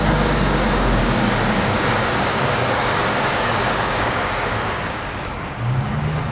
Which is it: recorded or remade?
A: remade